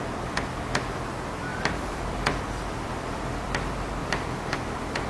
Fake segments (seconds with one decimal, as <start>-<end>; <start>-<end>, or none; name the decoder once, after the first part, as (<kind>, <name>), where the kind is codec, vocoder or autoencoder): 1.5-3.3 (vocoder, BigVGAN v2); 4.0-5.1